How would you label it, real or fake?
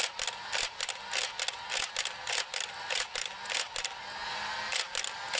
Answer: real